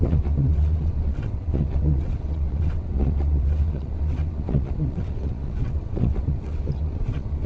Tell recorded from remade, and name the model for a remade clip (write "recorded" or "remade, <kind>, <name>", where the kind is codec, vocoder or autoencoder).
remade, vocoder, WaveNeXt